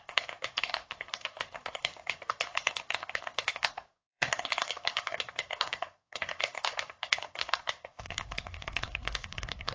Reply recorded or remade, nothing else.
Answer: remade